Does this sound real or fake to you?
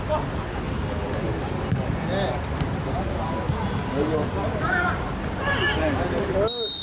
real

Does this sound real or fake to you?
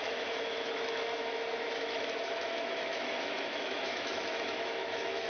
fake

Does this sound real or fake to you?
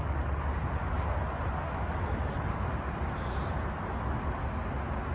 real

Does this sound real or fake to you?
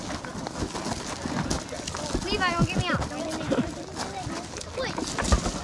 real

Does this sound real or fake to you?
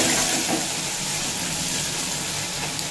real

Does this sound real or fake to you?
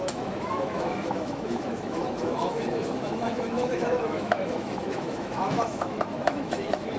fake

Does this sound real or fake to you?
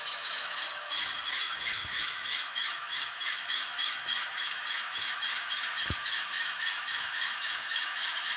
fake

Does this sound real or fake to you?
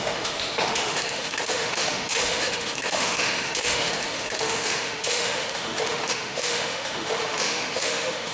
fake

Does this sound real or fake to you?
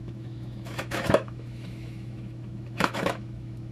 fake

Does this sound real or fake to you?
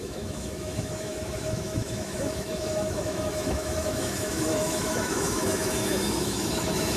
fake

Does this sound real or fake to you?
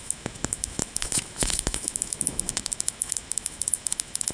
fake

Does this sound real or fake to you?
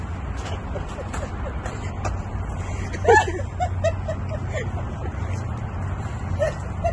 real